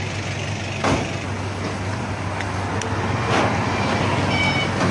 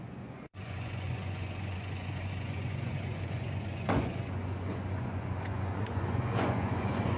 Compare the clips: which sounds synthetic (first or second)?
second